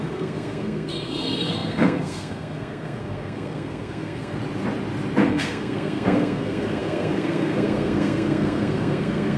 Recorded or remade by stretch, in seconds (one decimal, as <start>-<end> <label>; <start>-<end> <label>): 0.0-4.4 remade; 4.4-5.3 recorded; 5.3-9.4 remade